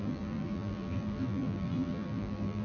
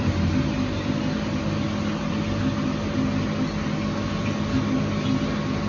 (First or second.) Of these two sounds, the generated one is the first